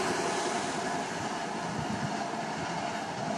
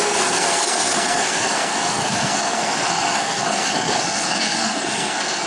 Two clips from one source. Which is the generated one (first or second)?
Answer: second